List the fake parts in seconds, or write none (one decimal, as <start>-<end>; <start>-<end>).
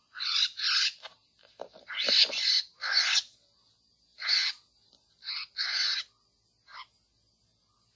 none